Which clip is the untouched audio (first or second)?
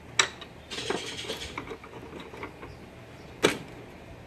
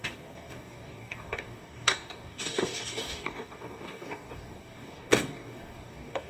first